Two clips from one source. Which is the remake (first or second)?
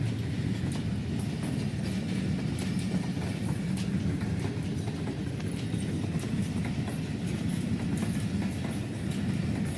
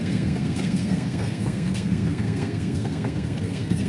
second